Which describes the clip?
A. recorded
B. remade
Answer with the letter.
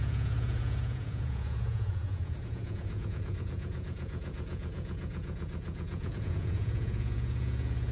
B